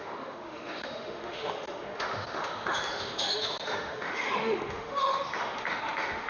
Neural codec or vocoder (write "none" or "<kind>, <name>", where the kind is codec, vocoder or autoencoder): autoencoder, DAC-VAE